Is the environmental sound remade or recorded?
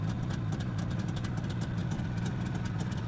recorded